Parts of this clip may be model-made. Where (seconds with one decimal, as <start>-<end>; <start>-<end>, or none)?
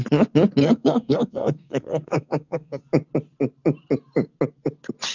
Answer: 0.6-2.8